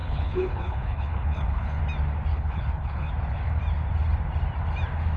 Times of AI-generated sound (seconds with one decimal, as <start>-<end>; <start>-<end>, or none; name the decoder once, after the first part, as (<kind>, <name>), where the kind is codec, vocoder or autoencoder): 0.0-1.8 (codec, HILCodec); 2.3-3.1